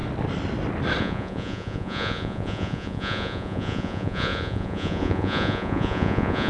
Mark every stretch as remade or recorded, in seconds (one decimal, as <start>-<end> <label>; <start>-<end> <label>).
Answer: 0.0-1.0 recorded; 1.0-6.5 remade